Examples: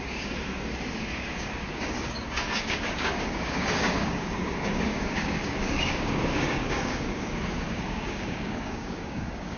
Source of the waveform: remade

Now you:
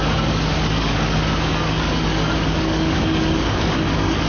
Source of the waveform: remade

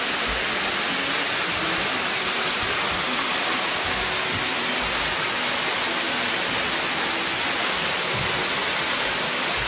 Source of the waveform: recorded